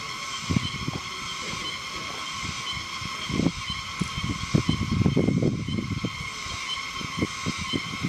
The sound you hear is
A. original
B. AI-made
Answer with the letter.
A